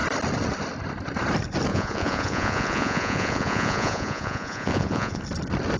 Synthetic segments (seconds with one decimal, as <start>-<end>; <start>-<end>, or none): 1.7-5.2